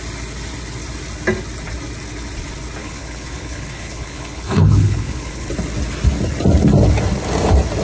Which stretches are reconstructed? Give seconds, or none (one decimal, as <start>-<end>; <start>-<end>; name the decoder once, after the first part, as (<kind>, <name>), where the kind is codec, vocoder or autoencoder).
2.8-5.5 (codec, HILCodec)